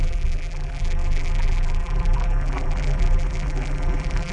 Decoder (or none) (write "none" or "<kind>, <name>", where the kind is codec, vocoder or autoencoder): vocoder, BigVGAN v2